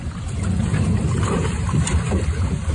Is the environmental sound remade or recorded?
recorded